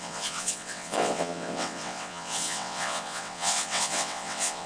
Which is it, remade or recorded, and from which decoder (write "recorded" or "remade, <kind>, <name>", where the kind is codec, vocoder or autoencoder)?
remade, vocoder, WaveNeXt